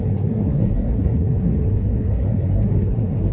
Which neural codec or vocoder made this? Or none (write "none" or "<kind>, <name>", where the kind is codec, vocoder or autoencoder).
codec, SNAC